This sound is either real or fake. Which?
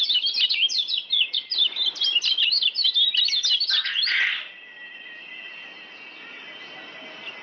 real